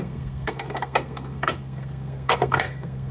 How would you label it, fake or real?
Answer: fake